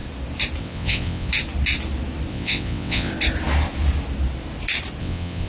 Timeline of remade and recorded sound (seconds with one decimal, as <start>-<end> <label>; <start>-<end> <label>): 0.0-0.6 recorded; 0.6-1.3 remade; 1.3-2.3 recorded; 2.3-3.1 remade; 3.1-5.0 recorded; 5.0-5.5 remade